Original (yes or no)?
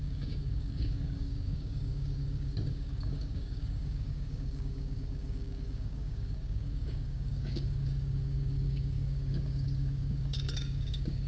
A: no